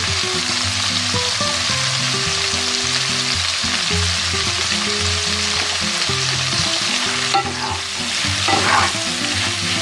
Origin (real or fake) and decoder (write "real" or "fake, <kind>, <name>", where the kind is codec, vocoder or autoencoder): real